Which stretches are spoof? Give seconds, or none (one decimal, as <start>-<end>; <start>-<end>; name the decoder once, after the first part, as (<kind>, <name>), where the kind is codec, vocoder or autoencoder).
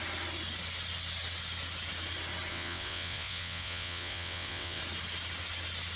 2.5-4.8 (vocoder, WaveNeXt)